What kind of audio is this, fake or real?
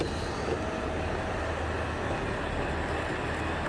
real